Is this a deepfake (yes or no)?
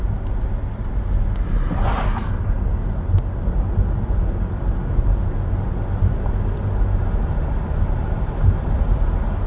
no